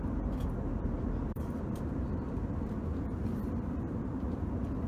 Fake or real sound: fake